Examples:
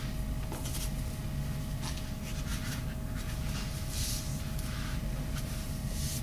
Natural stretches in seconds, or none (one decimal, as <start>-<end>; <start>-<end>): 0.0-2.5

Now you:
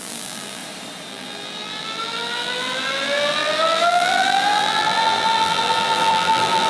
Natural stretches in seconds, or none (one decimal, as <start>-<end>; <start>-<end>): 0.6-1.1

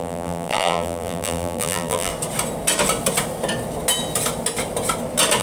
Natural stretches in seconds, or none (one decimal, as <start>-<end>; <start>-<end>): 2.1-5.4

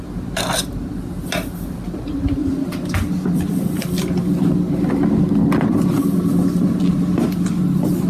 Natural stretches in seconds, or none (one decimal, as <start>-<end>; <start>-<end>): 0.0-2.4; 3.5-8.1

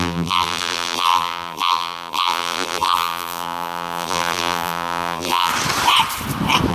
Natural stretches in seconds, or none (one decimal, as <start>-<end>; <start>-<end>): 5.5-6.7

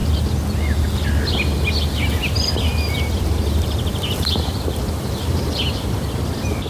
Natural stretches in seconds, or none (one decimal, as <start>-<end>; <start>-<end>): 0.0-2.2; 6.2-6.7